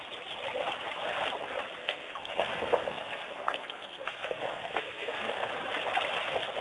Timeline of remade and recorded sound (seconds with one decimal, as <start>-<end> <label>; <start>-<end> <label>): 0.0-1.8 recorded; 1.8-5.5 remade; 5.5-6.6 recorded